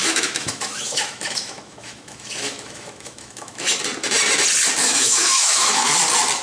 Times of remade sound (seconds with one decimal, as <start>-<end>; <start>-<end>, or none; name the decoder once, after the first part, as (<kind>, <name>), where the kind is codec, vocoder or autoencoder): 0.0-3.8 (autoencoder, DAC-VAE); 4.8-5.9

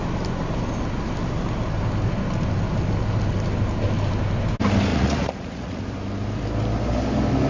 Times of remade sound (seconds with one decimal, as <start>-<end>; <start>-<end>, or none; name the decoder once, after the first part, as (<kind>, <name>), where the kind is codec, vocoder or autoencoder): 4.9-5.8 (vocoder, Vocos)

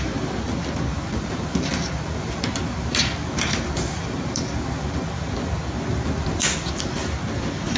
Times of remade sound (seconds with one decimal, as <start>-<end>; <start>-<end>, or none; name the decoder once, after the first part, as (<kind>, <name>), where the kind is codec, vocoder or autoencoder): 0.9-5.1 (vocoder, BigVGAN v2); 5.9-6.4